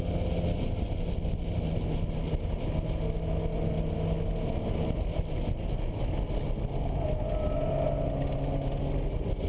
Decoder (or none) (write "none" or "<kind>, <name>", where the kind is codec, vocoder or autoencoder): none